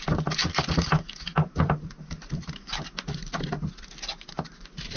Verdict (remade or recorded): recorded